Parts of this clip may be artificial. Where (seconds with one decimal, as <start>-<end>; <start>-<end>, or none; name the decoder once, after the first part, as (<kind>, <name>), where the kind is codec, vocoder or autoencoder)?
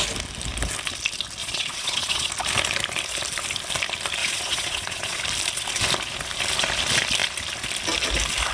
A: 1.4-2.3 (vocoder, Vocos); 4.2-5.2